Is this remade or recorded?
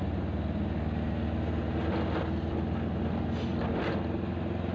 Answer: recorded